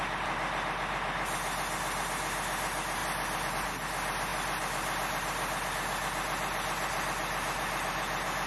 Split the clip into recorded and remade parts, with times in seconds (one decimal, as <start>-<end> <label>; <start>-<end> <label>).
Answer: 0.0-8.5 recorded